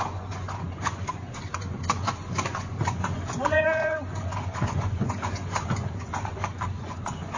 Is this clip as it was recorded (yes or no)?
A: no